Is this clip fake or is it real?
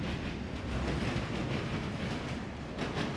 real